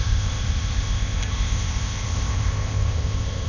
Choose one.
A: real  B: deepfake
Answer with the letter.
B